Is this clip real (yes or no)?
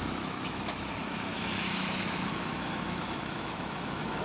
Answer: no